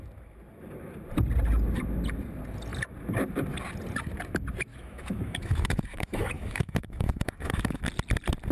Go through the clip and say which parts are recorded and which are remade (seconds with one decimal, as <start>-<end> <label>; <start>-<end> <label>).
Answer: 0.0-4.7 recorded; 4.7-7.8 remade; 7.8-8.5 recorded